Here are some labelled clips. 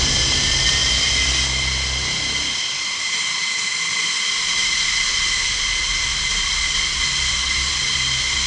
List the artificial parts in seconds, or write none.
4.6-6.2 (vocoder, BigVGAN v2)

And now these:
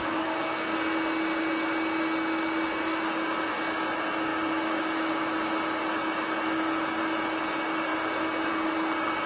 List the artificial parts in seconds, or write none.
none

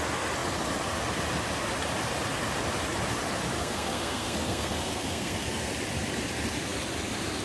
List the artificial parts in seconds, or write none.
3.6-5.7 (codec, SNAC)

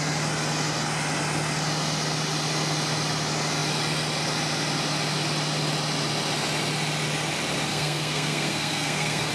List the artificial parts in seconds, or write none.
7.7-9.3 (codec, SNAC)